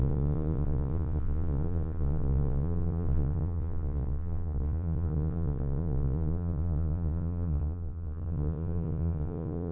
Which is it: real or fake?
fake